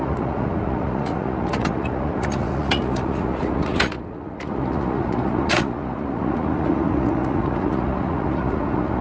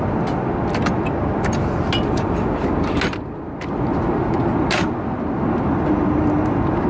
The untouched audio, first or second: second